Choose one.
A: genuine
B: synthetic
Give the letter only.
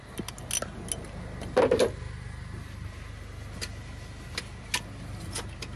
A